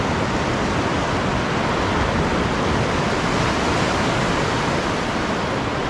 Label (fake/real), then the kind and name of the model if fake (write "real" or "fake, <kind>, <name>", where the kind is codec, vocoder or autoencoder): real